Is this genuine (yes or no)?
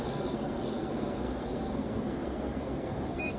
no